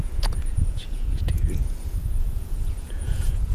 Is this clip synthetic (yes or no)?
yes